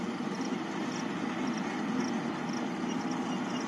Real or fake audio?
real